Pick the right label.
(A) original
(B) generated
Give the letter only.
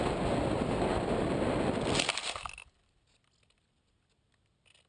A